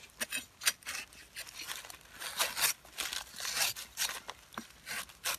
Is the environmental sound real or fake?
real